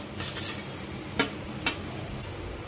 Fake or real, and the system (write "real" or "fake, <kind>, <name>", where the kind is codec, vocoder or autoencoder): real